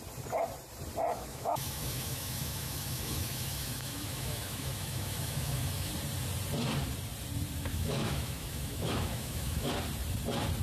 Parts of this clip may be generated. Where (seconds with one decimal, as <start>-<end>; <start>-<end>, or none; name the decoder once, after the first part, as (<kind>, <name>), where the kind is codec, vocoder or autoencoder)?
1.1-5.9 (autoencoder, DAC-VAE); 7.7-9.7